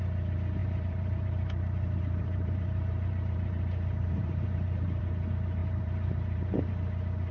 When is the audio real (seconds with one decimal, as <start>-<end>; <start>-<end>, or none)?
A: 0.0-0.6; 5.0-5.6; 6.7-7.3